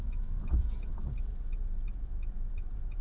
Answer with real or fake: fake